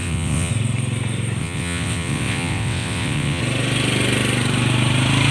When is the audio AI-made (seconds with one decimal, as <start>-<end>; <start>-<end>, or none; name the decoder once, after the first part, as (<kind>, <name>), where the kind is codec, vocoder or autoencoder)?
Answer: 0.0-0.5 (vocoder, WaveNeXt); 1.4-3.4